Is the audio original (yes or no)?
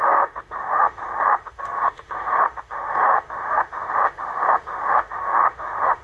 no